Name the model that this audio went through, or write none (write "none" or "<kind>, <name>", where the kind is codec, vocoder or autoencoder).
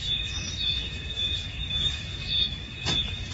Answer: autoencoder, DAC-VAE